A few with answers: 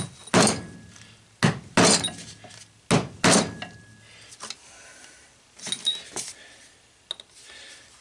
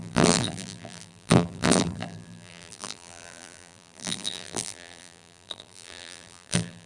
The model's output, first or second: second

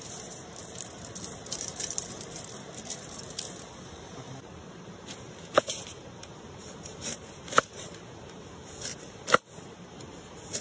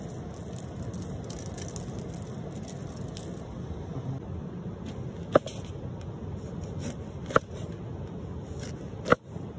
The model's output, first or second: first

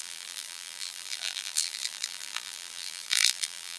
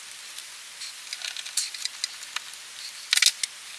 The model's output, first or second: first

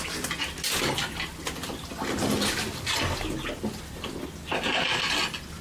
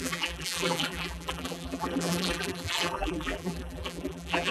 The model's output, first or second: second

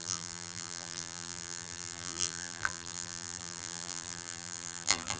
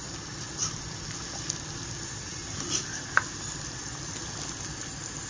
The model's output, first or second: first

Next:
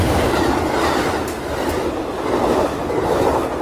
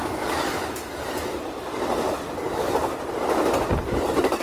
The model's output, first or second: second